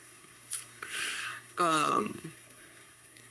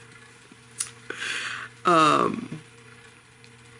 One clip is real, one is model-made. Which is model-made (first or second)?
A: first